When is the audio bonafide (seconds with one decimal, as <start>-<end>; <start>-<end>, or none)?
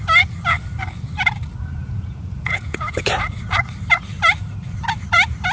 0.0-1.8; 3.1-5.5